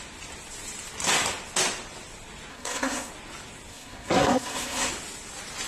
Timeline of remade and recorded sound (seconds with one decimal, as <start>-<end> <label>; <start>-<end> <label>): 0.0-2.5 recorded; 2.5-3.1 remade; 3.1-3.7 recorded; 3.7-4.9 remade; 4.9-5.7 recorded